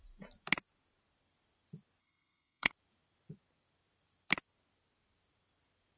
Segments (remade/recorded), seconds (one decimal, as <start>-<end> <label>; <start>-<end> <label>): 0.0-2.0 recorded; 2.0-2.7 remade; 2.7-6.0 recorded